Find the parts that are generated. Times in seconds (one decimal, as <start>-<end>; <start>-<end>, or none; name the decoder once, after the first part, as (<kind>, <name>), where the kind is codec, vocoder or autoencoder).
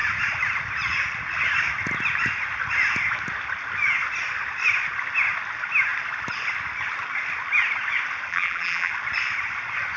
8.3-8.9 (vocoder, BigVGAN v2)